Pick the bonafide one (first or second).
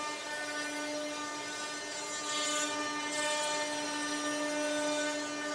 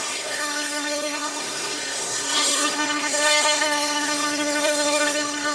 first